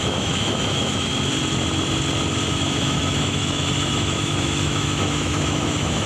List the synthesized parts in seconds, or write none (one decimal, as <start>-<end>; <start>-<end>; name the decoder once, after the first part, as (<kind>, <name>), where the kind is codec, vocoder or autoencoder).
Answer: 0.0-1.1 (autoencoder, DAC-VAE); 2.5-6.1